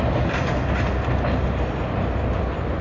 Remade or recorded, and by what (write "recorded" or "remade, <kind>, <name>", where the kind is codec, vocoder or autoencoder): recorded